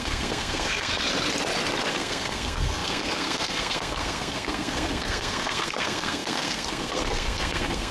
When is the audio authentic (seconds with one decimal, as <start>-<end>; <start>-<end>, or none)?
0.9-1.9